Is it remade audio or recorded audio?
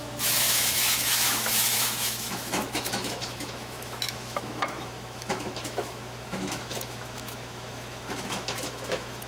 remade